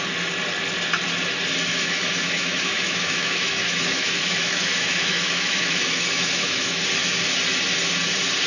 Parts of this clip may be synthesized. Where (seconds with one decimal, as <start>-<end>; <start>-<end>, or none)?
1.7-6.8